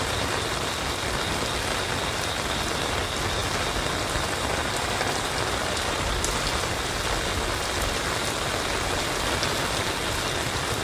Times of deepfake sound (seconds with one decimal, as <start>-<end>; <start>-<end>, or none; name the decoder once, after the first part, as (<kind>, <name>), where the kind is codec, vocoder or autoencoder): none